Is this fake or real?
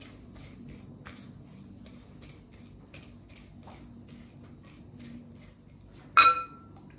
real